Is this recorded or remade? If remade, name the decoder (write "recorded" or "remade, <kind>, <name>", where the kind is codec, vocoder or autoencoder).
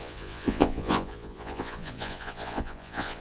remade, vocoder, Vocos